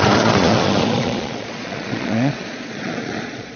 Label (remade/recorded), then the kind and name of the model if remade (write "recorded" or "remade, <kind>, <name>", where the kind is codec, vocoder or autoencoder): remade, vocoder, Vocos